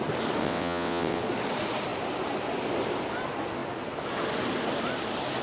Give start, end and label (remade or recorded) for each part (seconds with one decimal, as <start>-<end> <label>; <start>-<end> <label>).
0.0-0.4 recorded; 0.4-1.2 remade; 1.2-5.4 recorded